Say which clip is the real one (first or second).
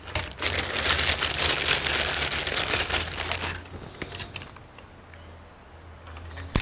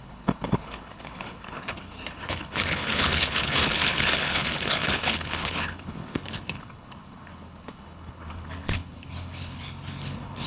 first